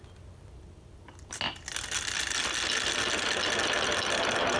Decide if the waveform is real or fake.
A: real